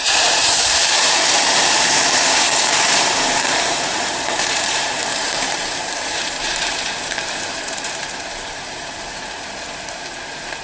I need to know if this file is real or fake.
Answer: fake